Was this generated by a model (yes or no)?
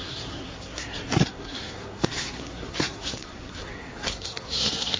yes